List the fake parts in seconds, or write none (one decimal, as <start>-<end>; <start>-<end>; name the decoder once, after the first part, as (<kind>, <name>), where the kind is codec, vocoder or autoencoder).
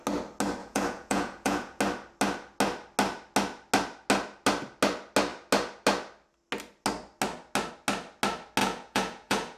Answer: 0.6-1.8 (vocoder, Vocos); 8.6-9.6